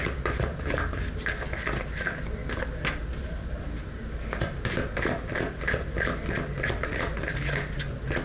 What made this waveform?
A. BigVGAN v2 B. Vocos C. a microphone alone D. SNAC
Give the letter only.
C